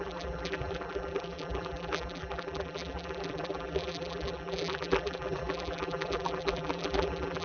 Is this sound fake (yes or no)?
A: yes